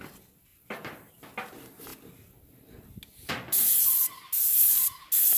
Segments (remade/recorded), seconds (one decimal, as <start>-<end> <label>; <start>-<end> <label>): 0.0-0.5 recorded; 0.5-1.1 remade; 1.1-5.4 recorded

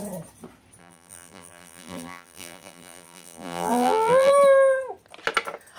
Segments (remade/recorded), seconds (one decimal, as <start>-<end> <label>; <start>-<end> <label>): 0.0-0.8 recorded; 0.8-4.3 remade; 4.3-5.8 recorded

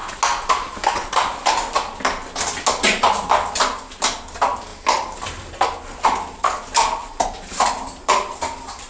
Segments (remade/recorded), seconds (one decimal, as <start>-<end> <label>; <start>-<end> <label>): 0.0-7.0 recorded; 7.0-8.4 remade; 8.4-8.9 recorded